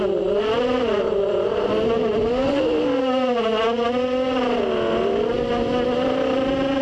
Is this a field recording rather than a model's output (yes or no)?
yes